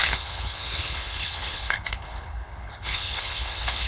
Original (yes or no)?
no